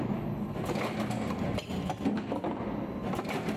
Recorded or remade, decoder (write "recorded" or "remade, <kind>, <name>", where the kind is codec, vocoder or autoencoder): recorded